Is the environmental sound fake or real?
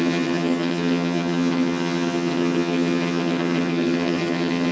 fake